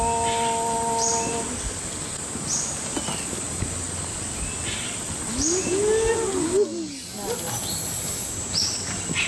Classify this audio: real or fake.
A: real